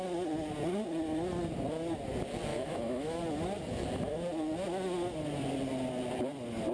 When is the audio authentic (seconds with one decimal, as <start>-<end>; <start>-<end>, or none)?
0.0-2.5; 3.2-6.7